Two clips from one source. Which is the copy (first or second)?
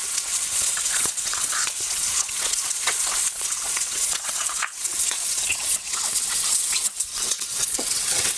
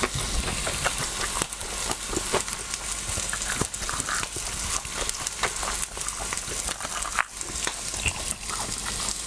first